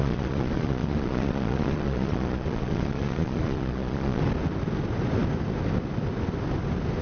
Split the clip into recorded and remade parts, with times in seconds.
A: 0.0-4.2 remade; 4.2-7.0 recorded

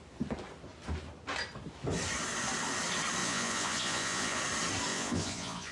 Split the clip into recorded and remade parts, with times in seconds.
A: 0.0-3.2 recorded; 3.2-4.4 remade; 4.4-4.9 recorded; 4.9-5.7 remade

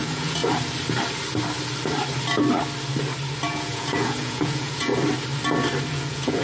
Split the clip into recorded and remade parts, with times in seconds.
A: 0.0-0.4 remade; 0.4-3.5 recorded; 3.5-4.9 remade; 4.9-5.9 recorded; 5.9-6.4 remade

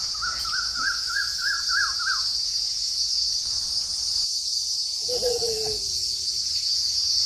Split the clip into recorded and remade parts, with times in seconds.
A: 0.0-7.3 remade